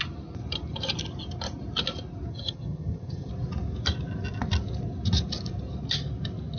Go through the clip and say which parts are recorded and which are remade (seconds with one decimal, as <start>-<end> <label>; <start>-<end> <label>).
0.0-2.3 recorded; 2.3-3.3 remade; 3.3-6.6 recorded